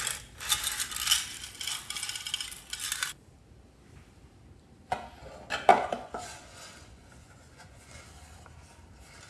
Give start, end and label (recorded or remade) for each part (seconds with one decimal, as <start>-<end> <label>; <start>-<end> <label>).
0.0-5.7 recorded; 5.7-8.0 remade; 8.0-9.3 recorded